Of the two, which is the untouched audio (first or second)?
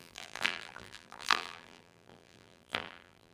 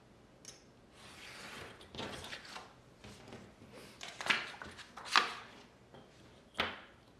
second